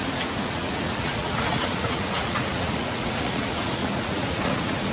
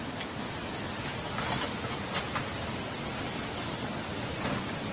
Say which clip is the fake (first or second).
first